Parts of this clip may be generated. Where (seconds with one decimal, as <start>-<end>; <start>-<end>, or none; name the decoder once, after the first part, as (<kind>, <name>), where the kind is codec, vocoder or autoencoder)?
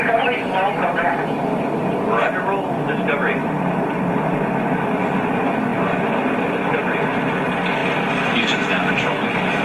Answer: 3.4-4.7 (vocoder, BigVGAN v2)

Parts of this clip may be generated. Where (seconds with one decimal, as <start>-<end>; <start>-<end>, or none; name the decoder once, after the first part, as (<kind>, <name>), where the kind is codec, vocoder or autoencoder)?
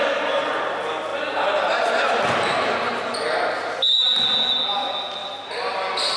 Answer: none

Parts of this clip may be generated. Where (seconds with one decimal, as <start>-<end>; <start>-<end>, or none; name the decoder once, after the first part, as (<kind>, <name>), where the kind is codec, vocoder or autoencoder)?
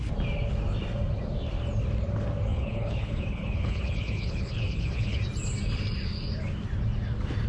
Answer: 2.5-5.2 (codec, HILCodec)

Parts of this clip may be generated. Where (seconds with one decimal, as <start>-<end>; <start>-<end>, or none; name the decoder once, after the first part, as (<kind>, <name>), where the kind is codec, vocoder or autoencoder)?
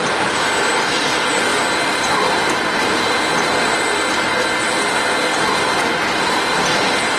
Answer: 0.0-1.5 (vocoder, BigVGAN v2); 5.8-7.2